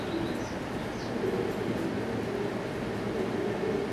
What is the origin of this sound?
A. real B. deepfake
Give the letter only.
A